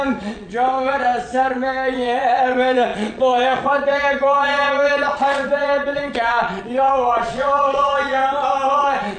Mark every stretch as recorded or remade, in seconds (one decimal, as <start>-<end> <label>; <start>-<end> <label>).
0.0-8.2 remade; 8.2-8.7 recorded; 8.7-9.2 remade